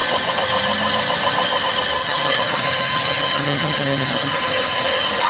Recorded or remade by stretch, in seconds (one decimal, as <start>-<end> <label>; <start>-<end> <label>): 0.0-2.0 recorded; 2.0-5.3 remade